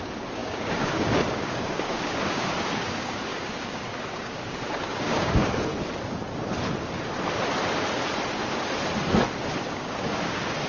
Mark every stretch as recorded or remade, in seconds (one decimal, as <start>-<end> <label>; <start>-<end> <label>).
0.0-5.7 remade; 5.7-9.7 recorded; 9.7-10.7 remade